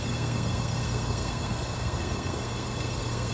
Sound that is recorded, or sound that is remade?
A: remade